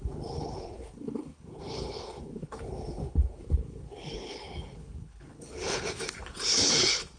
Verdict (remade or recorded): remade